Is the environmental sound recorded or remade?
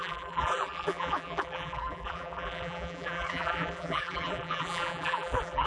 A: remade